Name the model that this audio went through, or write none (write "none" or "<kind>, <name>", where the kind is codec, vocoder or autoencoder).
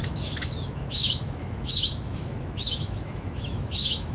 autoencoder, DAC-VAE